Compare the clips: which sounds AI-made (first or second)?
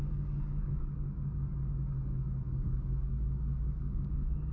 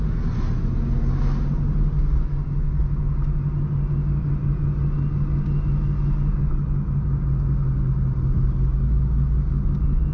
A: first